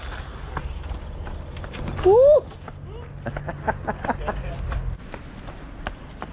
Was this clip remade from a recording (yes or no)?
no